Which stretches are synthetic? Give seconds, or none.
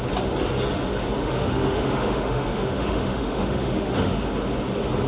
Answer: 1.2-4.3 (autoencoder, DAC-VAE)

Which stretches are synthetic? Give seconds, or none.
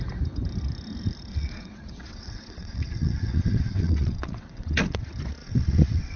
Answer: 1.3-5.0 (vocoder, WaveNeXt); 5.4-6.2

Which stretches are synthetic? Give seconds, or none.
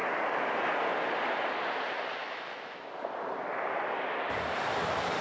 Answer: 2.2-2.8 (autoencoder, DAC-VAE)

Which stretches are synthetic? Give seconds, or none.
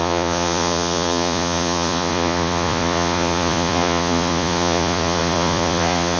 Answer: 0.0-6.2 (vocoder, Vocos)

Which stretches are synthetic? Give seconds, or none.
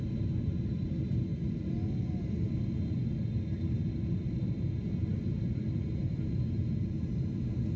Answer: none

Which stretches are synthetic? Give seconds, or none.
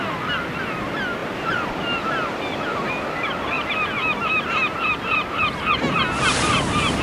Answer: none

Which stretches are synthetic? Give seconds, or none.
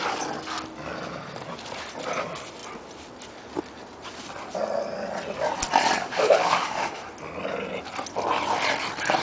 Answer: 6.0-7.0 (autoencoder, DAC-VAE)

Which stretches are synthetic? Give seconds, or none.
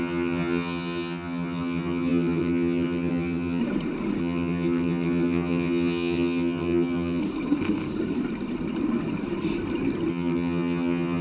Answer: 0.0-3.6 (vocoder, HiFi-GAN); 4.2-7.2; 10.1-11.2